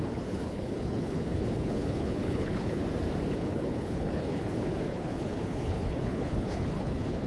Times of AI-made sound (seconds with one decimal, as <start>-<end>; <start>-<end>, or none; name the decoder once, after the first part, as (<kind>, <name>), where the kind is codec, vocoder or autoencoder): 0.0-2.8 (codec, HILCodec); 3.3-7.3